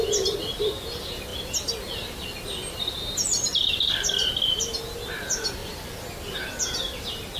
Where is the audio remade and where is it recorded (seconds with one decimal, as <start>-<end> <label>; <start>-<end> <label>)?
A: 0.0-7.4 recorded

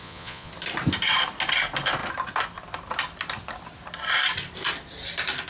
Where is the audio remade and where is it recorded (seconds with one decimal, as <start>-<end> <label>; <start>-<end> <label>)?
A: 0.0-0.5 remade; 0.5-5.5 recorded

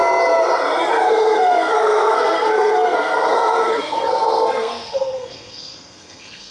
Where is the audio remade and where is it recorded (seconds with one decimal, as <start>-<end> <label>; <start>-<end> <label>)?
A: 0.0-0.9 recorded; 0.9-6.5 remade

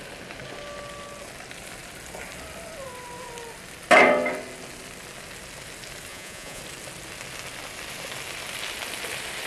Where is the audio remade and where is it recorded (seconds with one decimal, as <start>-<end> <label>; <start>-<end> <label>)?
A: 0.0-6.1 recorded; 6.1-6.6 remade; 6.6-9.5 recorded

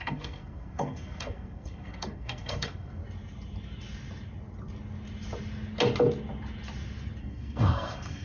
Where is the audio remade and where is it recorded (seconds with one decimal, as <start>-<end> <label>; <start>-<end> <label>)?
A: 0.0-3.0 remade; 3.0-7.2 recorded; 7.2-8.2 remade

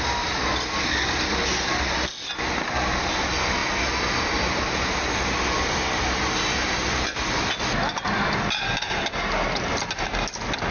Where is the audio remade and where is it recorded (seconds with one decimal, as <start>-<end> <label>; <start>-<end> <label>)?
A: 0.0-10.7 recorded